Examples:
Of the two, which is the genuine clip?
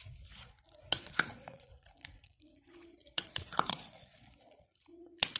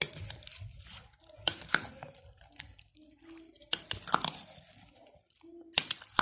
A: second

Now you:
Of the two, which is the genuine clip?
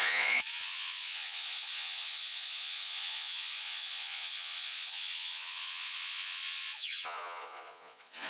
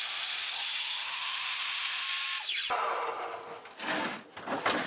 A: second